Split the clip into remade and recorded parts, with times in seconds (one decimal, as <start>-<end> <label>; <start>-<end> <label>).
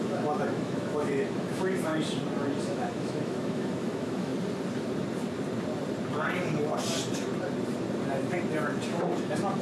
0.0-1.9 remade; 1.9-2.6 recorded; 2.6-4.3 remade; 4.3-9.2 recorded; 9.2-9.6 remade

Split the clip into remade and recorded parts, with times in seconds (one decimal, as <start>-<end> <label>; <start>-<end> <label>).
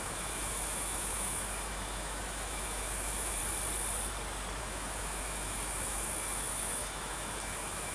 0.0-3.4 remade; 3.4-4.6 recorded; 4.6-7.9 remade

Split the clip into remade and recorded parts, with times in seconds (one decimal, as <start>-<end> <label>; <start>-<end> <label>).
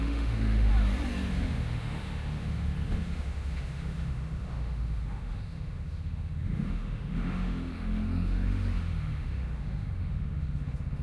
0.0-0.7 remade; 0.7-1.3 recorded; 1.3-11.0 remade